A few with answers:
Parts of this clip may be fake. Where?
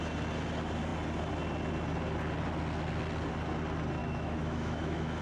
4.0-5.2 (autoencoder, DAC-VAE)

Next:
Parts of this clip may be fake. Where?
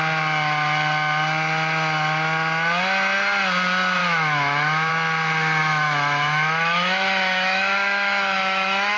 4.0-4.9 (autoencoder, DAC-VAE); 5.6-9.0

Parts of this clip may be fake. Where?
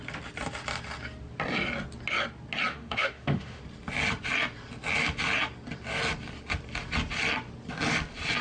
2.7-3.6 (autoencoder, DAC-VAE)